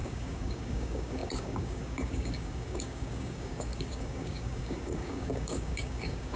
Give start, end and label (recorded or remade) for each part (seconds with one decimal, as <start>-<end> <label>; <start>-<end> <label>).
0.0-6.4 remade